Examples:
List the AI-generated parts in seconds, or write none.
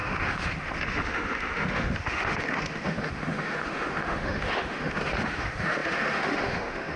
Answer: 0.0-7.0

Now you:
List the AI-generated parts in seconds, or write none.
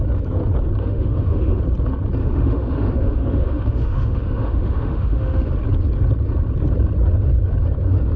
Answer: 0.8-1.6; 2.2-5.5